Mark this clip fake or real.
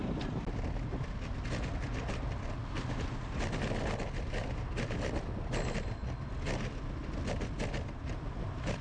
real